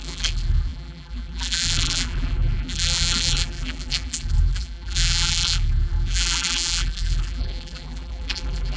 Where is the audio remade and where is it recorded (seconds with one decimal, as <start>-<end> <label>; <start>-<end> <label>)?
0.0-8.8 remade